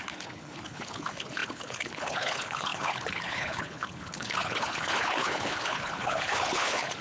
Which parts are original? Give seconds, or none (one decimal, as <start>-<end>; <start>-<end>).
none